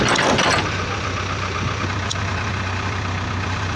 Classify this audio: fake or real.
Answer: fake